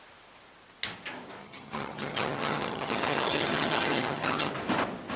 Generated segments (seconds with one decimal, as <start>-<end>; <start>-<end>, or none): 1.4-4.5